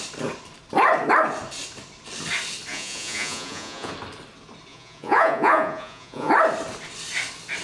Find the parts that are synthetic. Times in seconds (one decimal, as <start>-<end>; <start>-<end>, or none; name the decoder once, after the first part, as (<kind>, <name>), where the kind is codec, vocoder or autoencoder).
2.7-3.9 (vocoder, Vocos); 4.7-6.3